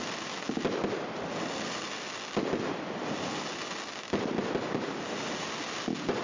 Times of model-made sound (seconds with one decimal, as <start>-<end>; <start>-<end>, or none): none